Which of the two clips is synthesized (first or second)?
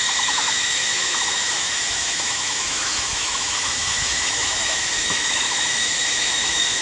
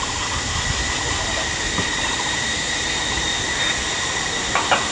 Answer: first